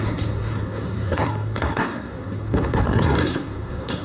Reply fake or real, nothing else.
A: fake